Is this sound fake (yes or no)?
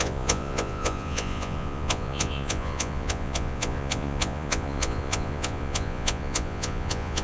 yes